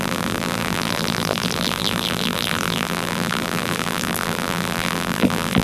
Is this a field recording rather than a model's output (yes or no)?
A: no